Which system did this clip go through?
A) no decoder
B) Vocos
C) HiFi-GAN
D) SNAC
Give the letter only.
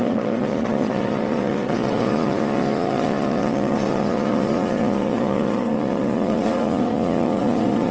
B